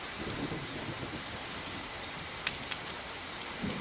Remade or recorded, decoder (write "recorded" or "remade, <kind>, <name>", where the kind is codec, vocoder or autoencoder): recorded